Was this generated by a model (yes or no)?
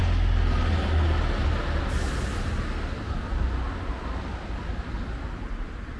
no